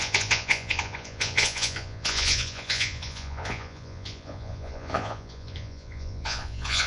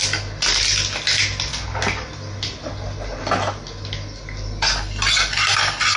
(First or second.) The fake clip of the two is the first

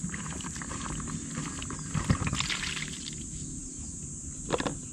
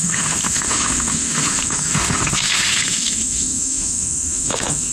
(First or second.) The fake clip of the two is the second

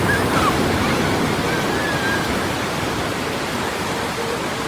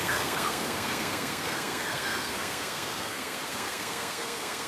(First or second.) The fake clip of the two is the second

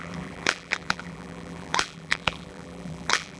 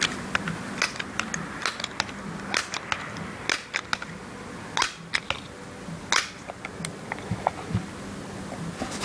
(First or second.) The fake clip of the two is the first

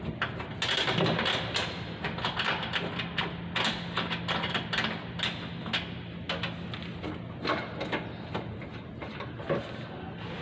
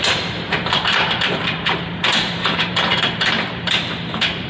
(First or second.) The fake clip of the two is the second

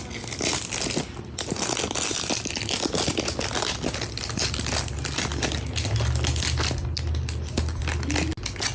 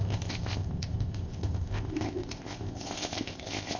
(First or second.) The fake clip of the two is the second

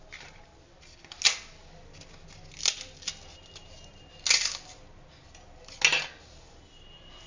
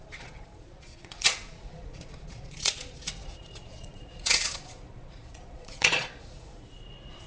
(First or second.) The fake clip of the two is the second